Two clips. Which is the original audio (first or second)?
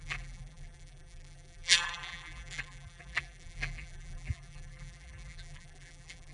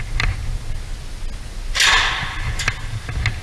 second